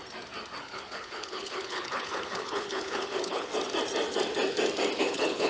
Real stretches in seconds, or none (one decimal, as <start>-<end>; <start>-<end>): 0.0-0.6; 3.5-5.0